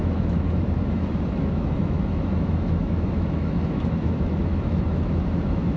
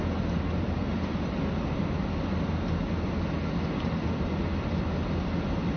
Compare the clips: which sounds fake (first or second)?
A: first